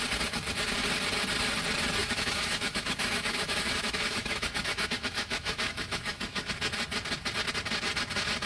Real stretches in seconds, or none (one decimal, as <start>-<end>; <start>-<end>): 0.0-2.0; 6.5-8.5